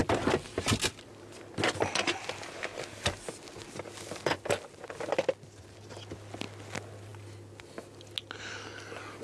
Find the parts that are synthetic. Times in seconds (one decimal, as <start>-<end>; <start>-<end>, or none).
none